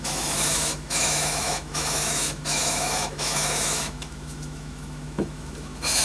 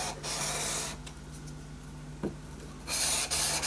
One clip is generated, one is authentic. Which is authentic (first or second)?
second